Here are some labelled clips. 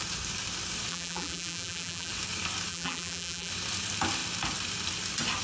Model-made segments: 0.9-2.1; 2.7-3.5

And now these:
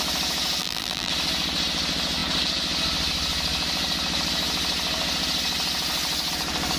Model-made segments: 0.6-1.1

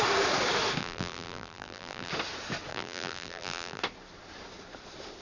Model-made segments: 0.8-2.1; 2.7-3.8

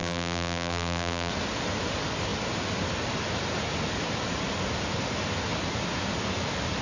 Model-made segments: 0.0-1.3

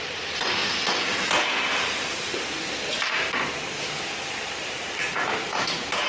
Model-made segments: 0.0-0.6; 4.3-6.1

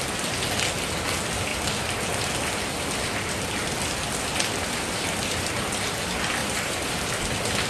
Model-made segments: 6.4-7.2

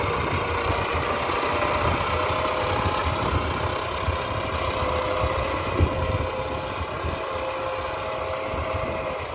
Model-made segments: none